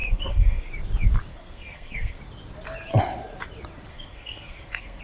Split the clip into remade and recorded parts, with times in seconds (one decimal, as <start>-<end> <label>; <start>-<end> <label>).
0.0-0.7 remade; 0.7-1.3 recorded; 1.3-2.2 remade; 2.2-3.9 recorded; 3.9-5.0 remade